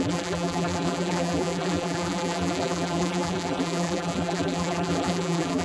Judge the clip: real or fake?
fake